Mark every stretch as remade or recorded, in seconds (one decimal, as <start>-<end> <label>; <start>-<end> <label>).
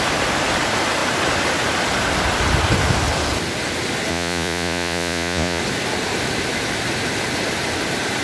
0.0-4.1 recorded; 4.1-5.6 remade; 5.6-8.2 recorded